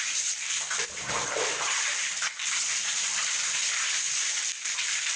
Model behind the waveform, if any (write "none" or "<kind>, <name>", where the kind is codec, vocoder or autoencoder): vocoder, BigVGAN v2